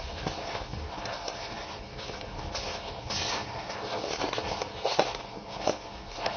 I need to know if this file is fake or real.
fake